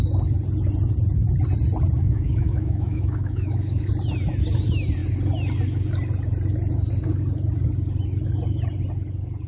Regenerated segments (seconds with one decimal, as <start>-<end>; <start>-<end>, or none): 2.0-3.9